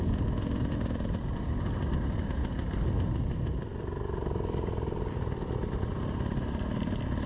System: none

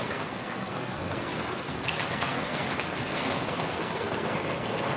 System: codec, SNAC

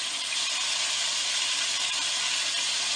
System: none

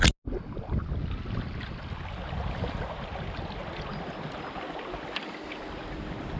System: none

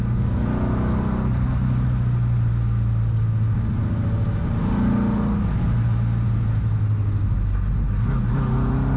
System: none